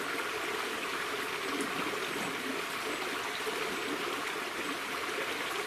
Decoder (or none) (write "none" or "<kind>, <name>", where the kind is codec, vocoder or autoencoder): none